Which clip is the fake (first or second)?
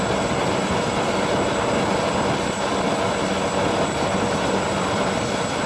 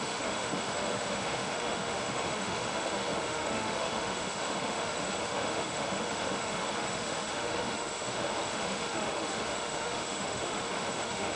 second